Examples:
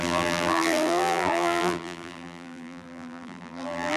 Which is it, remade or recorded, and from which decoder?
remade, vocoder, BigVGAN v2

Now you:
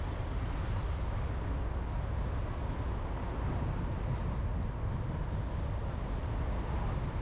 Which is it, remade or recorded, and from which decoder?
recorded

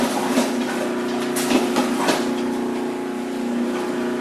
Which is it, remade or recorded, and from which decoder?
recorded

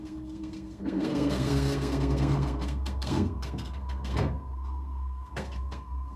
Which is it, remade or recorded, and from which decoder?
remade, codec, SNAC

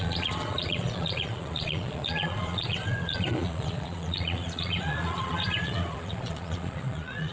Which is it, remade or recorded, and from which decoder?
remade, vocoder, Vocos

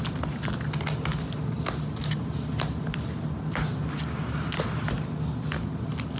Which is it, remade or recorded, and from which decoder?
recorded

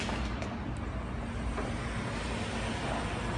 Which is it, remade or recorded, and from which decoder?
recorded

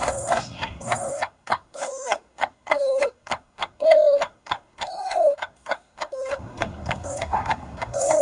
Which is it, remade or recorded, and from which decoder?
remade, codec, SNAC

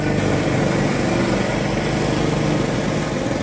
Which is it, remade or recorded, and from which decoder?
recorded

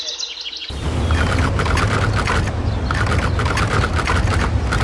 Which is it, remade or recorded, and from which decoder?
recorded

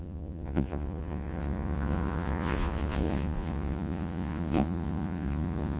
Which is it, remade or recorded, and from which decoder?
remade, vocoder, Vocos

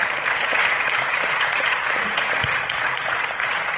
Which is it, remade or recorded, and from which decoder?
remade, vocoder, Vocos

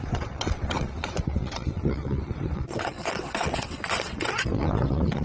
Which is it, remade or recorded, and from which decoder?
remade, vocoder, WaveNeXt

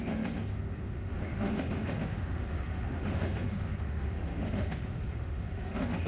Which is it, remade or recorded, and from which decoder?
remade, autoencoder, DAC-VAE